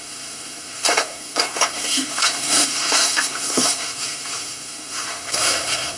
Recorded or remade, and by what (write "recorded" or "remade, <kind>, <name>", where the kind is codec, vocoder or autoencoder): remade, codec, SNAC